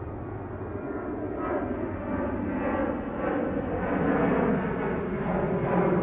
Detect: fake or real real